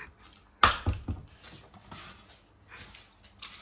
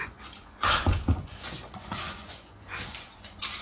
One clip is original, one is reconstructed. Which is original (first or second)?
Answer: first